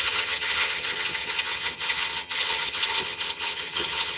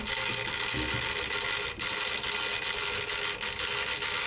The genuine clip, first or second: second